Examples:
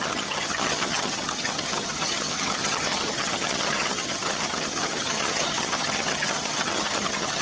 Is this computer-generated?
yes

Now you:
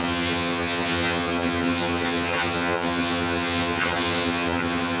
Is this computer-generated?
yes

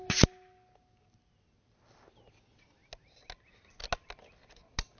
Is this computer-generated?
no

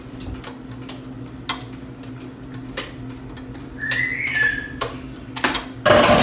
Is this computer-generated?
no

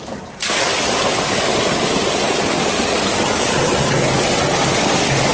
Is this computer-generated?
no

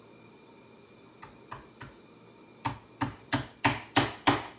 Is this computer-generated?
no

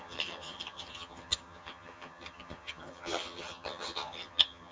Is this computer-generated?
yes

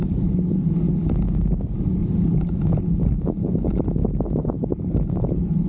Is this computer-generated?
no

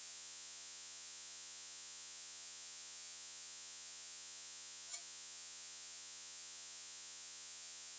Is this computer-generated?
yes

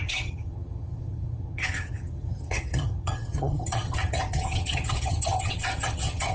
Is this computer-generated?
yes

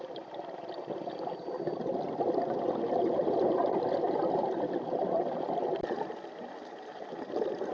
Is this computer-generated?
no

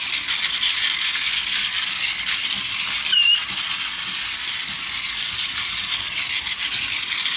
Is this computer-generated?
no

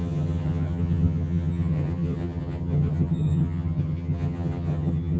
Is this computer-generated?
yes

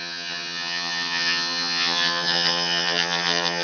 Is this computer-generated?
yes